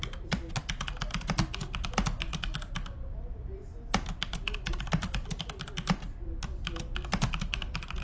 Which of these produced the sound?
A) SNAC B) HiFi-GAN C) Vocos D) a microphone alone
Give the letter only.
D